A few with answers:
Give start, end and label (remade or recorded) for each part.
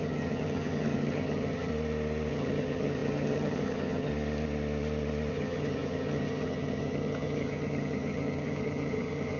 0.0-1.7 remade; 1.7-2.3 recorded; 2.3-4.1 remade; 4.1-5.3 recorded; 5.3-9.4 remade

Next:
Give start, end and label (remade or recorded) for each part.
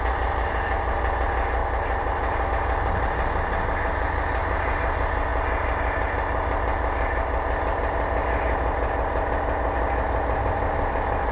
0.0-11.3 recorded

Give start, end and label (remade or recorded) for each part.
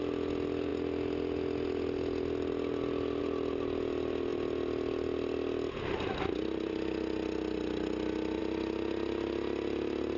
0.0-10.2 recorded